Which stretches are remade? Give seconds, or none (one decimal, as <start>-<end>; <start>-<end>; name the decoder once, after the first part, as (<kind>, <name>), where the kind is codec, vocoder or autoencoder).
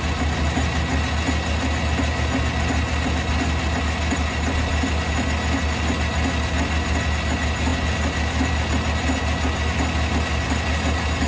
none